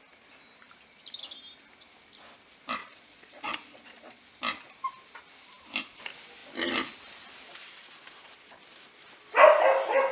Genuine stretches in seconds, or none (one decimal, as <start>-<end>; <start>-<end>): 0.0-2.8; 4.2-10.1